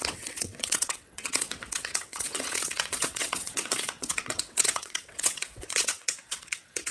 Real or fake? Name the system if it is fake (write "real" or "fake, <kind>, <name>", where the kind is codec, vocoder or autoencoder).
fake, vocoder, WaveNeXt